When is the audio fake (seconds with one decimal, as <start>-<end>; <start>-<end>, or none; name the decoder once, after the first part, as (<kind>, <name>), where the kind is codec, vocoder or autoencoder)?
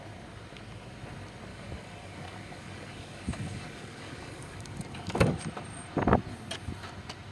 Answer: 1.5-5.4 (codec, DAC)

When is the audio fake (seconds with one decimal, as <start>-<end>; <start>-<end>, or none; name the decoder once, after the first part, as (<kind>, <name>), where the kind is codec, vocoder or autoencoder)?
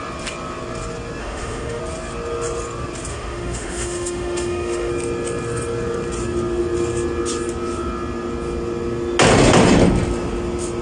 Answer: 1.2-1.8 (autoencoder, DAC-VAE); 3.1-4.9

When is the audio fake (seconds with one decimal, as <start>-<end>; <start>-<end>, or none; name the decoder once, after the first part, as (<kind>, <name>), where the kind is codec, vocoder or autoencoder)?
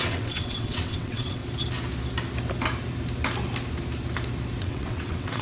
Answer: 0.0-1.4 (vocoder, WaveNeXt); 4.6-5.4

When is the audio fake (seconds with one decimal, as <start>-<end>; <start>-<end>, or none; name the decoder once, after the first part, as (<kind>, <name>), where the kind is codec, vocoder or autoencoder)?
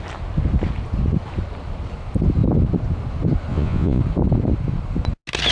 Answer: 3.5-4.0 (vocoder, Vocos)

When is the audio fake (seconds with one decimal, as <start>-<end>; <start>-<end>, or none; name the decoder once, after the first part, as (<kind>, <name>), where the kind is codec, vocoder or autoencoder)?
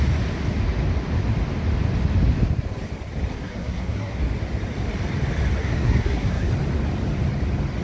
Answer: 3.3-4.2 (codec, SNAC); 5.6-6.5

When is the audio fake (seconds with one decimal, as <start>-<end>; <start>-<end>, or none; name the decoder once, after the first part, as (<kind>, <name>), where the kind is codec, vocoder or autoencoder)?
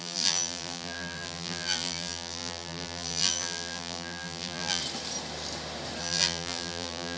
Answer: 0.0-4.8 (vocoder, BigVGAN v2); 6.0-7.2